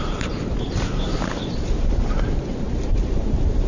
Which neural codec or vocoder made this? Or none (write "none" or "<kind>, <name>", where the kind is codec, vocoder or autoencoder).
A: vocoder, BigVGAN v2